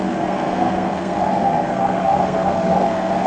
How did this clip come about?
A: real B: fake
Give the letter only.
B